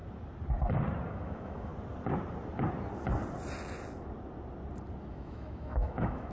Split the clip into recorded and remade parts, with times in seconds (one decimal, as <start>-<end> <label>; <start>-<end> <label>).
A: 0.0-1.1 recorded; 1.1-1.7 remade; 1.7-5.1 recorded; 5.1-6.3 remade